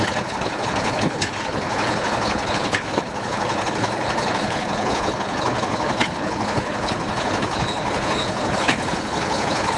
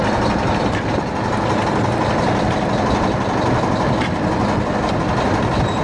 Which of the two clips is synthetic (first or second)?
first